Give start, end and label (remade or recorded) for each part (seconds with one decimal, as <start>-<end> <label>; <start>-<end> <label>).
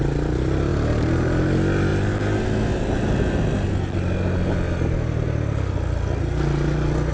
0.0-7.1 recorded